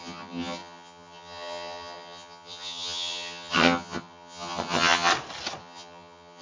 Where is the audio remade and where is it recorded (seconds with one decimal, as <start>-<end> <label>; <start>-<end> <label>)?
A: 0.0-5.1 remade; 5.1-5.6 recorded; 5.6-6.4 remade